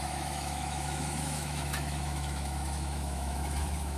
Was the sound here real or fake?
fake